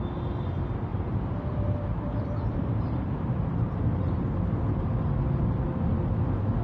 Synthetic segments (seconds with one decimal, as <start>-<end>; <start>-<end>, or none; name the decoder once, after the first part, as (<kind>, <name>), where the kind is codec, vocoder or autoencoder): 0.9-4.9 (vocoder, BigVGAN v2)